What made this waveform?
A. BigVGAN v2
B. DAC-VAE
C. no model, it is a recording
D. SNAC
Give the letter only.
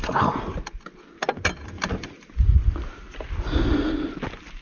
C